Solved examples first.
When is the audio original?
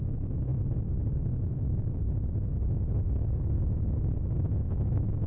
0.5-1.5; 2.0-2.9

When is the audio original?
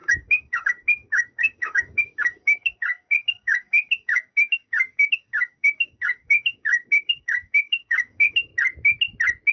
8.5-9.5